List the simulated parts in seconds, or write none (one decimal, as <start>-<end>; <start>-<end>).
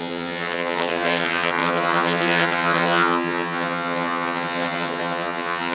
0.0-5.7